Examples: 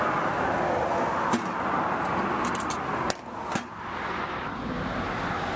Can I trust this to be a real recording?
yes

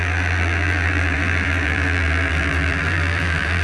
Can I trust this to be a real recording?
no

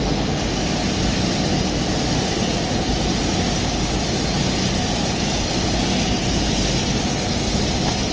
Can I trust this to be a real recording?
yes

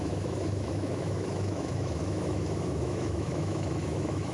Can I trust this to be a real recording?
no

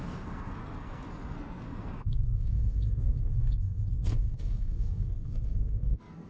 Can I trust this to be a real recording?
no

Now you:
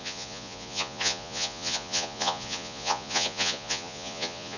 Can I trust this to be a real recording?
no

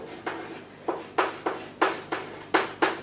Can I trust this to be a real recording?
yes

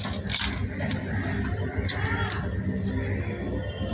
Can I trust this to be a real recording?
yes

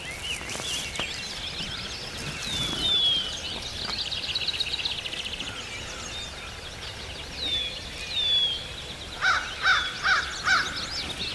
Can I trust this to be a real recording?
yes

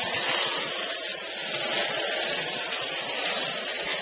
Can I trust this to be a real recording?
yes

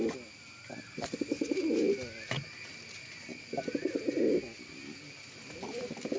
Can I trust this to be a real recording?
yes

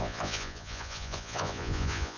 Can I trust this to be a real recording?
no